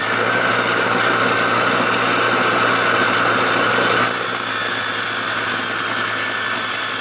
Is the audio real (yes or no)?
yes